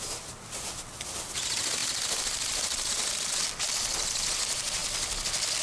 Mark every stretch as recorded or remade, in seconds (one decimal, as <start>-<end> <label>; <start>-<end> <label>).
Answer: 0.0-5.6 recorded

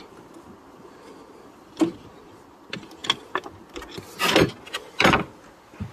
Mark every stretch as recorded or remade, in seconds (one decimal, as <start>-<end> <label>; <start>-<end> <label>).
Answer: 0.0-5.9 recorded